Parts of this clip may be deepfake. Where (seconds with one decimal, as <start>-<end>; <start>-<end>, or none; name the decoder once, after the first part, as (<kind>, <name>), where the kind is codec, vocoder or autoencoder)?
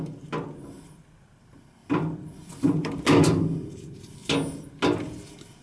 none